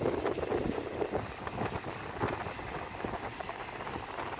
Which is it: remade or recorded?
recorded